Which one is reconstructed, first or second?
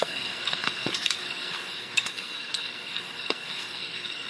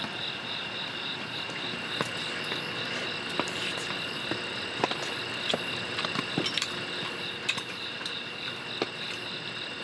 first